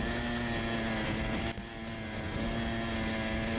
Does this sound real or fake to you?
real